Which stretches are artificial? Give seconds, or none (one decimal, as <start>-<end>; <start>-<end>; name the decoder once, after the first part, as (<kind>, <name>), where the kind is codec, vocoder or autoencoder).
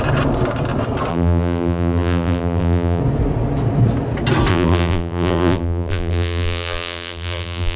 1.1-3.0 (vocoder, BigVGAN v2); 4.5-7.8